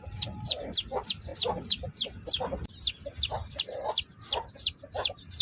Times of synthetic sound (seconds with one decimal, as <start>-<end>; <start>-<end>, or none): 0.0-1.3; 4.5-5.4